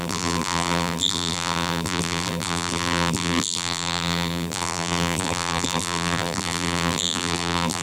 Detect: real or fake fake